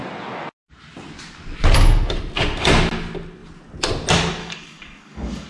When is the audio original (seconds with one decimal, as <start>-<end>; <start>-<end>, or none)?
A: 0.0-4.4